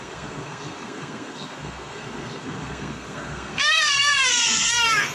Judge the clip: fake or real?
fake